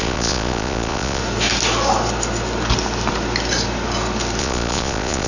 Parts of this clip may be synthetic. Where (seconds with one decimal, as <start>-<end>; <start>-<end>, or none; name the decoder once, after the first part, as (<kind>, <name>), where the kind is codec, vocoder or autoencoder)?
0.0-1.2 (vocoder, Vocos); 4.4-5.3